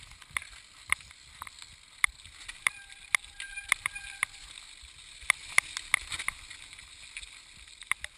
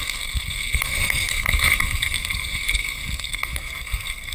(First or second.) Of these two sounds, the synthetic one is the second